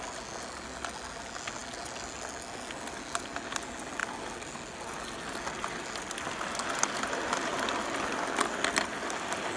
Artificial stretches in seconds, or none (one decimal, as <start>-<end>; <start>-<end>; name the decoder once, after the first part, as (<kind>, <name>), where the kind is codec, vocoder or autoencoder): none